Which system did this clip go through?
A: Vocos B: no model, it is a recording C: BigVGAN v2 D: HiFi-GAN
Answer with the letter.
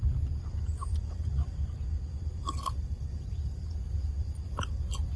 B